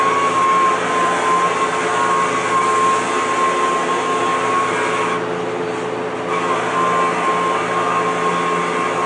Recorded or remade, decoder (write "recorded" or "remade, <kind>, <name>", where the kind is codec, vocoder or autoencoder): recorded